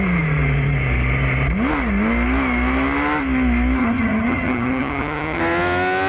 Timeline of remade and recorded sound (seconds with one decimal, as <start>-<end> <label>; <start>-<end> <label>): 0.0-3.8 recorded; 3.8-5.4 remade; 5.4-6.1 recorded